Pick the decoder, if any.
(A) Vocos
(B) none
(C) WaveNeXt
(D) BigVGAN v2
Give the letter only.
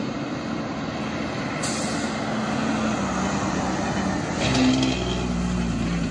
B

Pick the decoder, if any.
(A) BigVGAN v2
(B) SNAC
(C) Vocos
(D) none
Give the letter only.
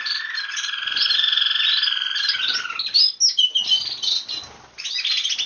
D